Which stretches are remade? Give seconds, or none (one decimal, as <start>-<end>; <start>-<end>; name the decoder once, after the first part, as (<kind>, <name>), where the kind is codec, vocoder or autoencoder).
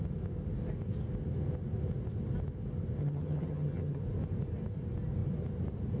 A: 3.0-4.0 (vocoder, HiFi-GAN)